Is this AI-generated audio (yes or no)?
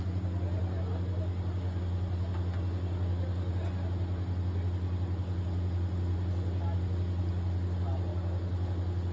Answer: no